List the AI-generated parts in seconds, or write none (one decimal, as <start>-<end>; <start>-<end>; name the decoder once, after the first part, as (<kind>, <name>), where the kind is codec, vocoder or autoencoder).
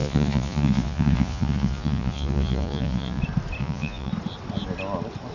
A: 0.0-3.2 (vocoder, Vocos); 3.6-4.1